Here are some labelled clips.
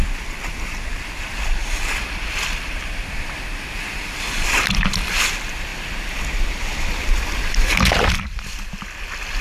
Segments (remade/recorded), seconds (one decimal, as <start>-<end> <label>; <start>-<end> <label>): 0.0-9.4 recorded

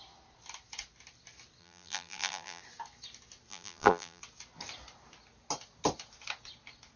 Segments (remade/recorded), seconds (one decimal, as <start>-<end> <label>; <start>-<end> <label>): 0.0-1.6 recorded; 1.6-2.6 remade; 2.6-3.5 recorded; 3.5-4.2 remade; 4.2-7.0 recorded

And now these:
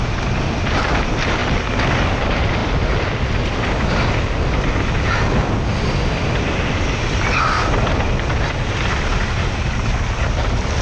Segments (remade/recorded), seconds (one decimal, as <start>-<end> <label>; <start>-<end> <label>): 0.0-10.8 recorded